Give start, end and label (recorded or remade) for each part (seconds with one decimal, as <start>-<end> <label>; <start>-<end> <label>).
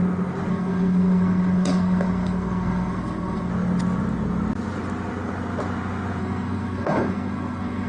0.0-0.5 recorded; 0.5-3.5 remade; 3.5-6.2 recorded; 6.2-7.9 remade